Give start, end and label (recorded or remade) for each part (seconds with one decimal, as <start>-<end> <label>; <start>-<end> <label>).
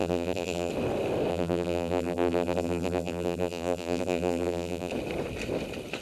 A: 0.0-0.7 remade; 0.7-1.3 recorded; 1.3-4.9 remade; 4.9-6.0 recorded